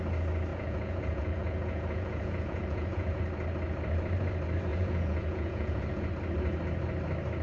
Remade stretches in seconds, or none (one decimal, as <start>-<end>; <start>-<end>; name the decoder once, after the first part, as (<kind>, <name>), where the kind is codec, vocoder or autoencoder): 0.5-3.2 (vocoder, Vocos); 4.7-6.1